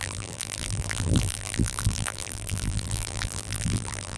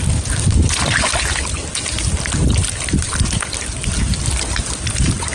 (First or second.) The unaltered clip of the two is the second